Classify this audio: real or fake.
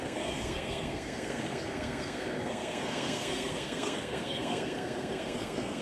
fake